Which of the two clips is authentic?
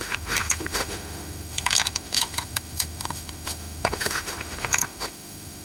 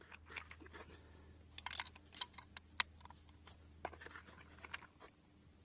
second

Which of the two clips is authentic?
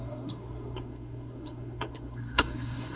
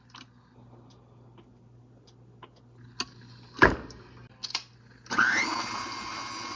second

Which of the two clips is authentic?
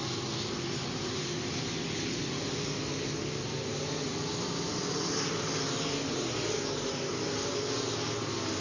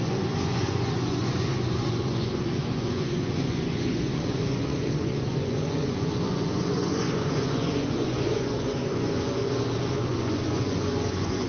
first